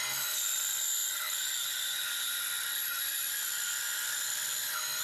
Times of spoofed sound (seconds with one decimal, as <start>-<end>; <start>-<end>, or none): none